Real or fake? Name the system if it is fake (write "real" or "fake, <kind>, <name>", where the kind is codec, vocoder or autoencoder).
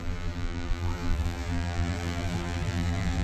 fake, vocoder, BigVGAN v2